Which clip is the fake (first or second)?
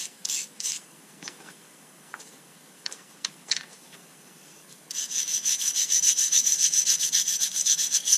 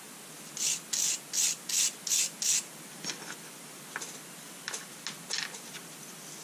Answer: first